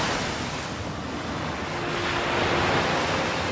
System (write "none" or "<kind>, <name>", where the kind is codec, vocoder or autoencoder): none